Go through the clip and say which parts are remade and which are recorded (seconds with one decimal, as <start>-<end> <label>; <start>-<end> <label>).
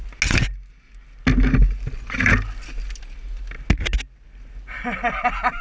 0.0-5.6 recorded